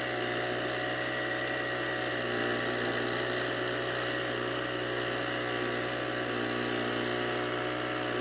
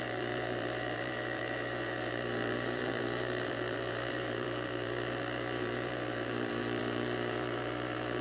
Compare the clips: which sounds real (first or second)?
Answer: first